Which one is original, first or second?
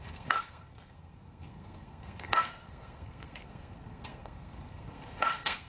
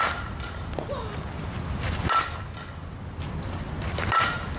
second